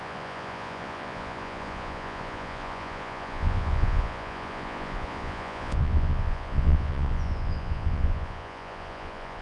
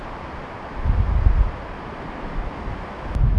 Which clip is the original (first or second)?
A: second